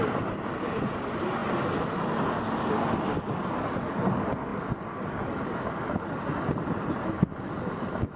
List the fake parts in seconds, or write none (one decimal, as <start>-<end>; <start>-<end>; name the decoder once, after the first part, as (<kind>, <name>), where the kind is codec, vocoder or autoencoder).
none